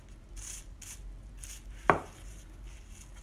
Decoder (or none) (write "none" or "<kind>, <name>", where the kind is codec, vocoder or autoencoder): none